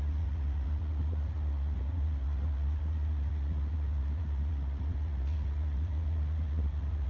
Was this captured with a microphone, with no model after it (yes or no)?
no